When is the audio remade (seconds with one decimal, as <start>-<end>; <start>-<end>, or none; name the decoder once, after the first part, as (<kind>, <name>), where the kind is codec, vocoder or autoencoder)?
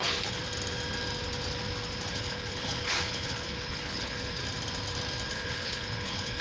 0.0-0.4 (codec, HILCodec); 2.1-4.4; 5.3-6.4